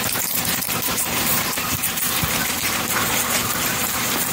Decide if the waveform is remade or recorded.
remade